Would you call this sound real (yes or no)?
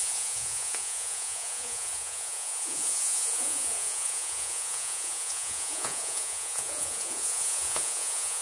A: no